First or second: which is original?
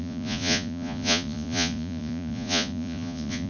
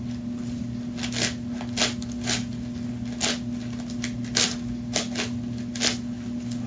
second